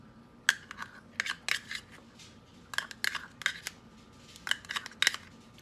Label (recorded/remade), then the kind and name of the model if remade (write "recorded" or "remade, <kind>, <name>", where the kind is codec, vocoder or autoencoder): recorded